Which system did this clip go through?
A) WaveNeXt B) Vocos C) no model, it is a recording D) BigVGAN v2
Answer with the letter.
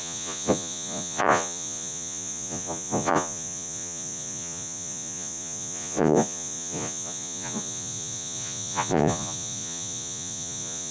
B